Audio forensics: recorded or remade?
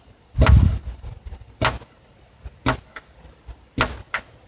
recorded